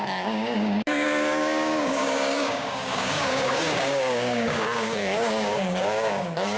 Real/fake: fake